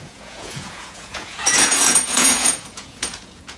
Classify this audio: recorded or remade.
remade